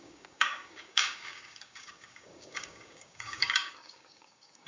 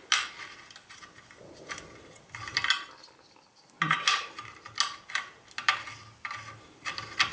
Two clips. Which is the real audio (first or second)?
second